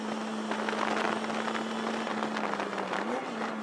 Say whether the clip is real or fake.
real